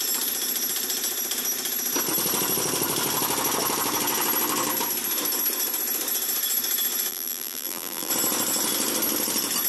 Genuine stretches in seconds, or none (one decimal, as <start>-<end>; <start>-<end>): 0.0-7.1; 8.1-9.7

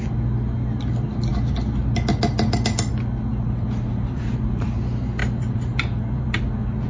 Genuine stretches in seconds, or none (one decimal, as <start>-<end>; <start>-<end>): 0.0-3.3; 4.8-5.2; 6.4-6.9